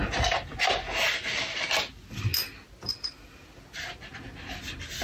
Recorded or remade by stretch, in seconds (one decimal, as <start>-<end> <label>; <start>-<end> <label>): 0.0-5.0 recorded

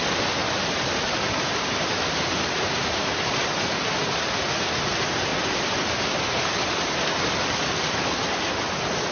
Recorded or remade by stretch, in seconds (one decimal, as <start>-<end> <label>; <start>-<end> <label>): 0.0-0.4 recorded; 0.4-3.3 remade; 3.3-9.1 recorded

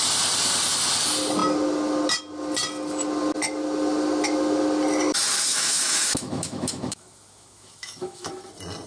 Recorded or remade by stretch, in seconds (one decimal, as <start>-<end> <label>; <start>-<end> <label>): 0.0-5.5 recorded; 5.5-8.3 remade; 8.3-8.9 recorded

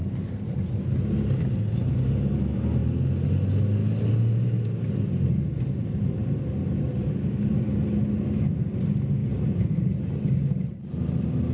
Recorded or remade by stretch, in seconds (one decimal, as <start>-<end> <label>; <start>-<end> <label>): 0.0-11.5 recorded

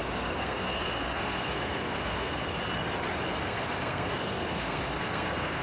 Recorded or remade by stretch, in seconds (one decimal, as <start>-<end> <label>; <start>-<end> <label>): 0.0-2.5 remade; 2.5-3.4 recorded; 3.4-5.6 remade